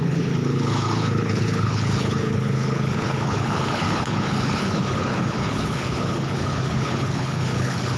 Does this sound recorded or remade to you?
remade